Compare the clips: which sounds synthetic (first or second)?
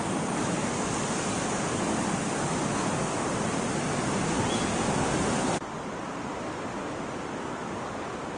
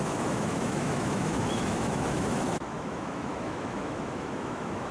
second